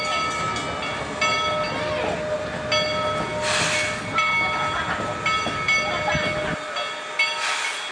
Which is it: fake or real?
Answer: real